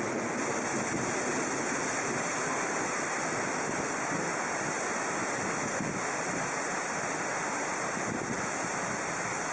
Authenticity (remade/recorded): recorded